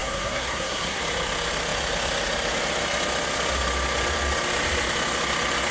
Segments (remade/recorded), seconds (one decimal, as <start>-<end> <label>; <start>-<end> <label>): 0.0-1.0 remade; 1.0-5.7 recorded